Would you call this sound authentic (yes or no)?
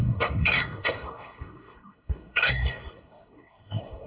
no